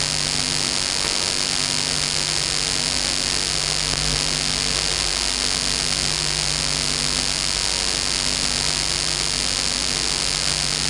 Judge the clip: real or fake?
real